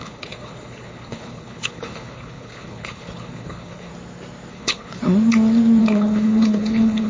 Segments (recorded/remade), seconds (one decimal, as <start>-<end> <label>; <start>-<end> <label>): 0.0-3.9 remade; 3.9-4.5 recorded; 4.5-5.0 remade; 5.0-5.8 recorded; 5.8-7.1 remade